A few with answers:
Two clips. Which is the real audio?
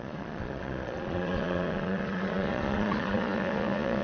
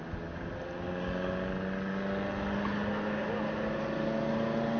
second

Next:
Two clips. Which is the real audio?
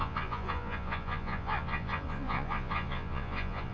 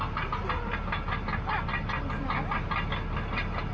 second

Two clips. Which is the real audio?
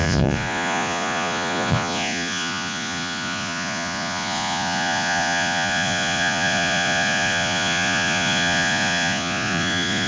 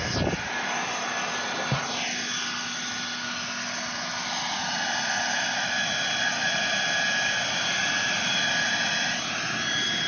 second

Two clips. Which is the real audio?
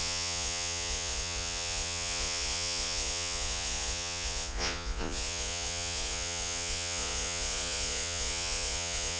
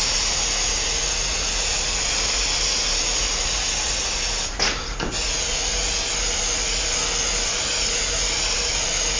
second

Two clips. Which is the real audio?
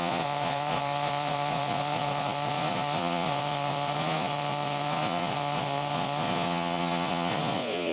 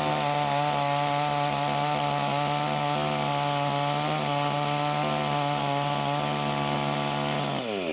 second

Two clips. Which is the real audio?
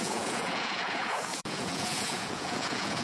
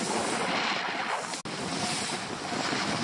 second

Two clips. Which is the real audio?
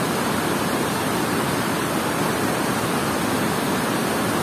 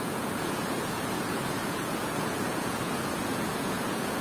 first